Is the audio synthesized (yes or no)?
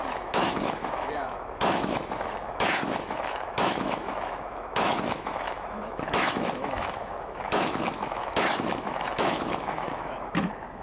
yes